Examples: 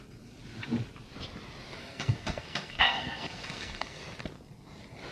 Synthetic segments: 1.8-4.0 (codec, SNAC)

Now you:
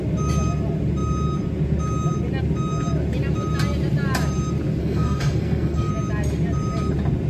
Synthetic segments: 4.8-5.9 (codec, SNAC)